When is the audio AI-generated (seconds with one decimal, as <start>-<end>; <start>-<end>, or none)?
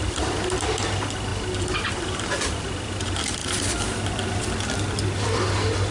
none